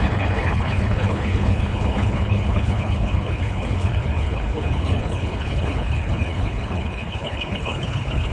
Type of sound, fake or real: fake